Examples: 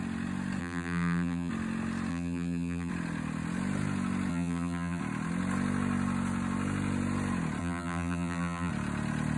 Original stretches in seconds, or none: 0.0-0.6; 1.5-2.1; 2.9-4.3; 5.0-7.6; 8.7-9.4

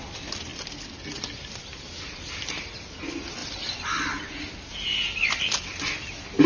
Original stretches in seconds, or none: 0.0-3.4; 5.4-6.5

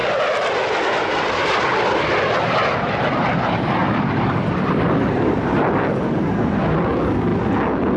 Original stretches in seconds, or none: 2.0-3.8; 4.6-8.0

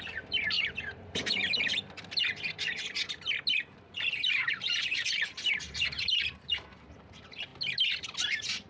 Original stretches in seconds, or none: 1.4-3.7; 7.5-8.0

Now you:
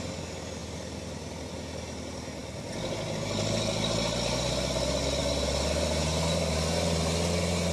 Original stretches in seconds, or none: 0.0-0.6; 1.5-7.7

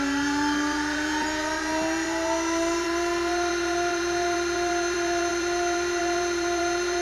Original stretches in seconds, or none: none